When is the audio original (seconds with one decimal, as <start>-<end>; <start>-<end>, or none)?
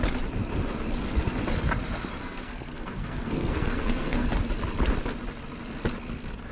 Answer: 0.0-2.2; 4.3-6.5